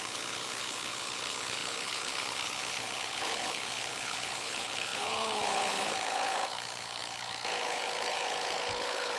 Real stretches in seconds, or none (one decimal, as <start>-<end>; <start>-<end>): none